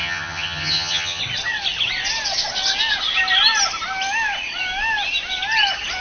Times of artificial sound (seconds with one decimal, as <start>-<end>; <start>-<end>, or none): 0.0-1.2